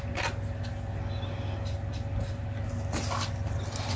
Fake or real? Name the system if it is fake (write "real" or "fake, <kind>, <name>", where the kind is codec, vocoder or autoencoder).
real